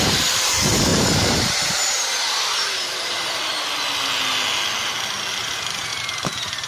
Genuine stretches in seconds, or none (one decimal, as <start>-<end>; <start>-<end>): 3.5-5.4